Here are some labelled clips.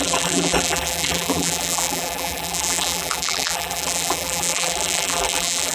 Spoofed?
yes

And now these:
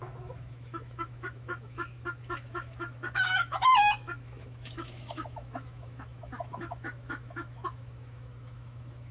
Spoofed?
yes